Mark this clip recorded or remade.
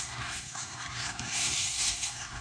remade